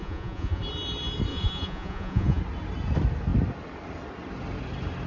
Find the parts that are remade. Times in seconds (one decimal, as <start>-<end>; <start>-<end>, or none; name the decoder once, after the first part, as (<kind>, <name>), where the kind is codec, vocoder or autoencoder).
0.0-0.6 (vocoder, Vocos); 1.3-2.4

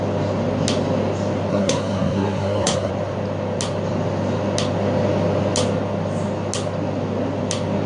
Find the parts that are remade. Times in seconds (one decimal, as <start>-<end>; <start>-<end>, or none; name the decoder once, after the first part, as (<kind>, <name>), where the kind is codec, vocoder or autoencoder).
1.5-2.9 (codec, SNAC)

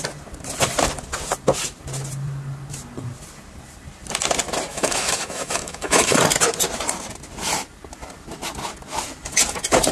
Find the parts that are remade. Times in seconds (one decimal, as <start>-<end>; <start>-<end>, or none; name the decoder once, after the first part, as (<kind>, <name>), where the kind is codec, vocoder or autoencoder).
4.7-6.2 (autoencoder, DAC-VAE)

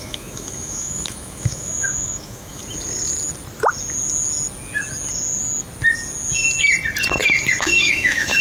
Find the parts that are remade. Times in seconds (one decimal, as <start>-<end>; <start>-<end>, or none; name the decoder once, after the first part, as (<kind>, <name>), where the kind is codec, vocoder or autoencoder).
0.0-2.6 (autoencoder, DAC-VAE); 7.6-8.4

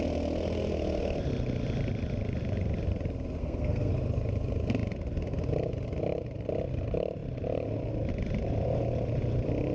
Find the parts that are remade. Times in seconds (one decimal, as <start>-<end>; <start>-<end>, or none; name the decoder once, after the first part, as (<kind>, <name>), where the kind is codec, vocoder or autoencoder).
3.4-3.9 (codec, SNAC)

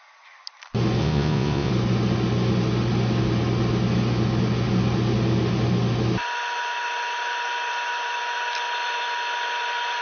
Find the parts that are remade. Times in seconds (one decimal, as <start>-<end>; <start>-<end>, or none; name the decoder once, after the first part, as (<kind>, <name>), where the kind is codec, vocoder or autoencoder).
1.0-1.7 (vocoder, Vocos)

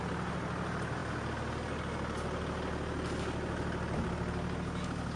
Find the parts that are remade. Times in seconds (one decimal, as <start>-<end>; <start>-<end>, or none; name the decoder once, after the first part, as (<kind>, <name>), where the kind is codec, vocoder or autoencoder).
none